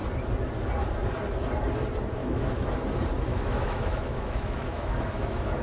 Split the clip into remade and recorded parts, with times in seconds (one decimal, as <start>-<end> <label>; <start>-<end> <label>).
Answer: 0.0-2.2 recorded; 2.2-2.7 remade; 2.7-3.3 recorded; 3.3-5.6 remade